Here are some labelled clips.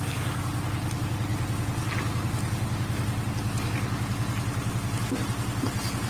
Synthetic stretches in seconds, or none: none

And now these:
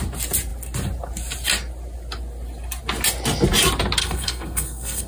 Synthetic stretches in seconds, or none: 4.0-5.1 (codec, SNAC)

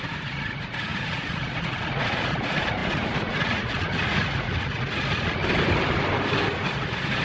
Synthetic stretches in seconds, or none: 0.0-5.4 (vocoder, Vocos); 6.5-7.2

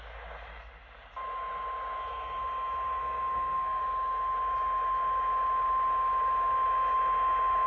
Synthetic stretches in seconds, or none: 3.0-3.8 (codec, SNAC)